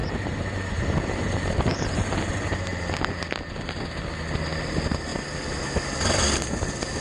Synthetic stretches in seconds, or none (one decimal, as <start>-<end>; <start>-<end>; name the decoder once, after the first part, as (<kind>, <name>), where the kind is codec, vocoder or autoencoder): 0.0-3.2 (vocoder, BigVGAN v2)